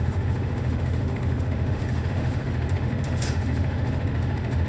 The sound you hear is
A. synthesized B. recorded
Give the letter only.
A